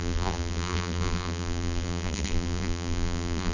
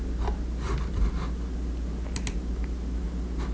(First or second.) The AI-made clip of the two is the first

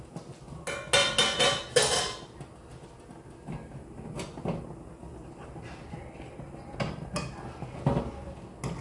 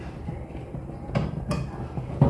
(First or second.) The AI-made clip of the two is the second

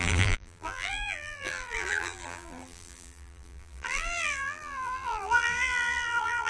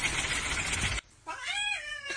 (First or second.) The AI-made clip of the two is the first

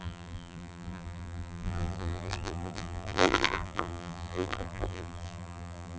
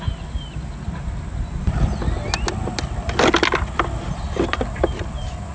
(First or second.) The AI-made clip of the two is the first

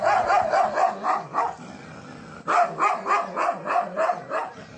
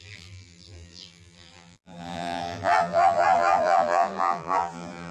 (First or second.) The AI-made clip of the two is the second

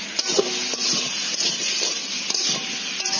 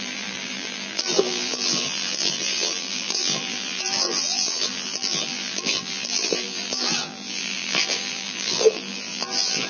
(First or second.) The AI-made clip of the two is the second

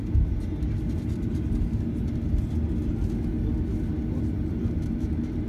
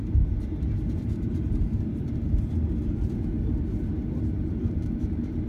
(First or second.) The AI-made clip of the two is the second